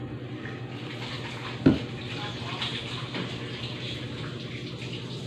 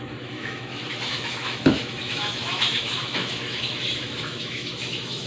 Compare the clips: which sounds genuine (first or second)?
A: first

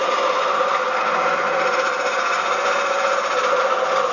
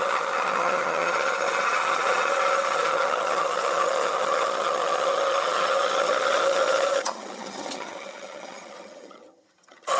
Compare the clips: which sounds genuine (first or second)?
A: first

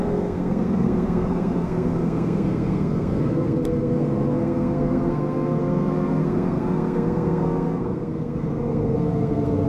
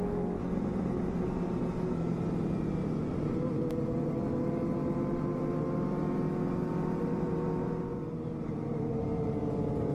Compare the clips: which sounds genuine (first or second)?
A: second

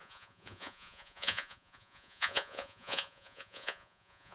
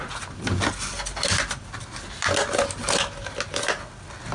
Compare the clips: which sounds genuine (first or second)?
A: second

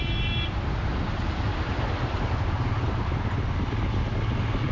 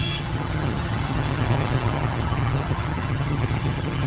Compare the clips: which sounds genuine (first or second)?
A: first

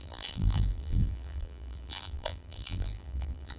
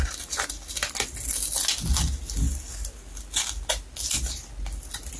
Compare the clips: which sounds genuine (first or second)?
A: second